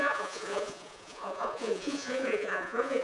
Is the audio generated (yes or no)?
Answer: yes